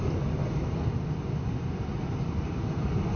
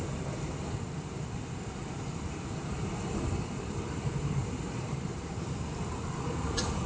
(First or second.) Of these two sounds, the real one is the first